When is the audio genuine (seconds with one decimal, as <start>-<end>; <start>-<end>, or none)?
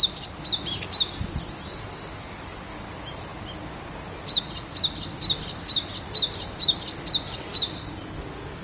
0.0-8.6